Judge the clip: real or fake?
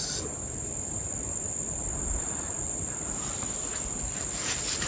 fake